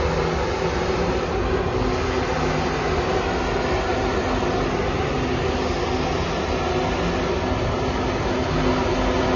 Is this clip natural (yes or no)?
yes